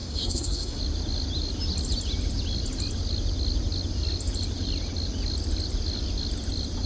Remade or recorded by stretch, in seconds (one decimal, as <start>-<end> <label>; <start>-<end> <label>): 0.0-0.8 remade; 0.8-6.9 recorded